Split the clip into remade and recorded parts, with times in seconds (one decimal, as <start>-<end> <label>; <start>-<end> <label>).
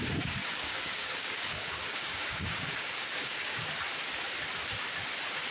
0.0-0.4 recorded; 0.4-3.7 remade; 3.7-5.5 recorded